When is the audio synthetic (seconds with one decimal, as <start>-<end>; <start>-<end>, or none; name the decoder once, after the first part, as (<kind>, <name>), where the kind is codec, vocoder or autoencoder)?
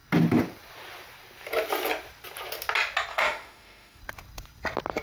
3.1-4.0 (autoencoder, DAC-VAE)